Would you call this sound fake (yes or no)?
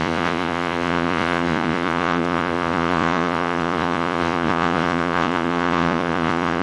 yes